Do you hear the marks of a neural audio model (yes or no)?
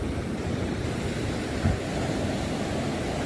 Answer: no